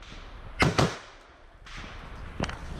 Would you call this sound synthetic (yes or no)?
no